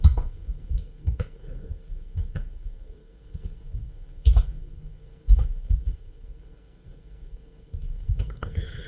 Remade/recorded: remade